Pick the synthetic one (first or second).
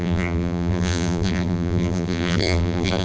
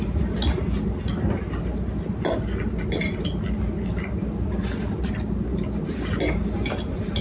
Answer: first